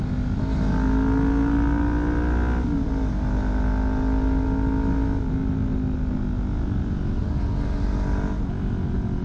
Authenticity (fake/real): real